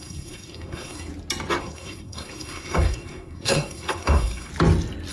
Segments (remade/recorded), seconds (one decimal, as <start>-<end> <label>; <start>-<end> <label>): 0.0-1.1 remade; 1.1-1.6 recorded; 1.6-4.5 remade; 4.5-5.1 recorded

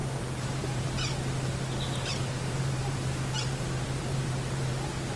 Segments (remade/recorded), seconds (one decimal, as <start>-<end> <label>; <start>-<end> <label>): 0.0-0.9 remade; 0.9-2.1 recorded; 2.1-5.2 remade

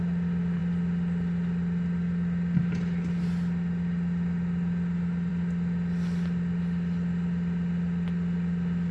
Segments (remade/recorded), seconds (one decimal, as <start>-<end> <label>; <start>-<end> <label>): 0.0-8.9 recorded

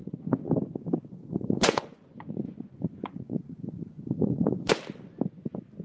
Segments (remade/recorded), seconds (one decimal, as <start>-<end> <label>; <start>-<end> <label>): 0.0-0.5 remade; 0.5-1.2 recorded; 1.2-4.7 remade; 4.7-5.8 recorded

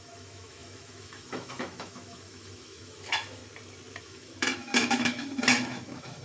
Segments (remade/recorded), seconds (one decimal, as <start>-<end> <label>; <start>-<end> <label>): 0.0-3.4 remade; 3.4-4.0 recorded; 4.0-6.2 remade

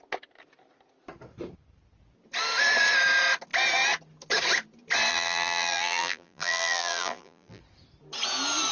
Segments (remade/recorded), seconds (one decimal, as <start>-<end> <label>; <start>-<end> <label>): 0.0-5.1 recorded; 5.1-7.6 remade; 7.6-8.7 recorded

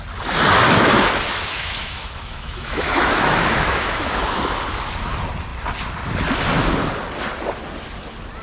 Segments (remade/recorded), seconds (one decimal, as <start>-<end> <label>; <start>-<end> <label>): 0.0-1.5 recorded; 1.5-4.4 remade; 4.4-8.4 recorded

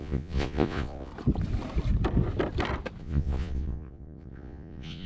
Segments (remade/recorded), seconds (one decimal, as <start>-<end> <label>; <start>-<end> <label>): 0.0-1.1 remade; 1.1-3.0 recorded; 3.0-5.1 remade